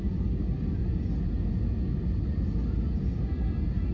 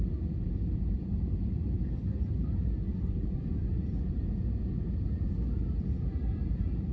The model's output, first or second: second